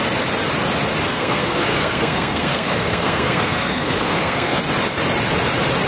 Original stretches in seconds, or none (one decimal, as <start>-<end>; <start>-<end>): 0.0-1.1; 4.6-5.9